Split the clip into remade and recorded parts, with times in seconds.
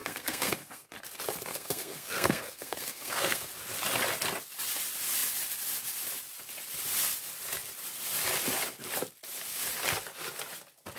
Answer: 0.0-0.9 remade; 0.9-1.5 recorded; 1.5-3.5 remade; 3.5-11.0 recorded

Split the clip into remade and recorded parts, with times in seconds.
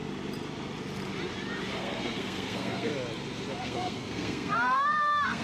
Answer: 0.0-1.8 recorded; 1.8-2.9 remade; 2.9-3.6 recorded; 3.6-5.4 remade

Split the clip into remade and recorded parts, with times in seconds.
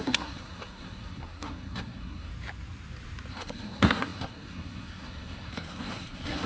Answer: 0.0-2.3 remade; 2.3-3.3 recorded; 3.3-6.5 remade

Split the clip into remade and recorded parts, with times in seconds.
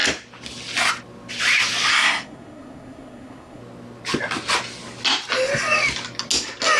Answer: 0.0-1.9 recorded; 1.9-3.6 remade; 3.6-6.8 recorded